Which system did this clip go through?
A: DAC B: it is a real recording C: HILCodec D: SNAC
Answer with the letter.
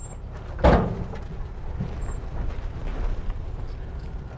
B